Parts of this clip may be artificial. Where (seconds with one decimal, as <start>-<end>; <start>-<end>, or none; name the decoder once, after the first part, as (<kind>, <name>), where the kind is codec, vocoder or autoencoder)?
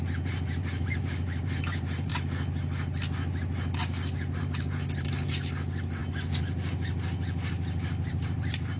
0.0-2.1 (vocoder, BigVGAN v2); 4.4-6.0; 8.1-8.8